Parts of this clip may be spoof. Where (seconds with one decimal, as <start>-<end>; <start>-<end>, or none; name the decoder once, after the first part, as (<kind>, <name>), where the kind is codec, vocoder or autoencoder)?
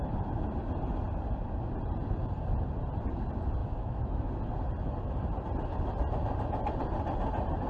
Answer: 3.6-4.3 (autoencoder, DAC-VAE)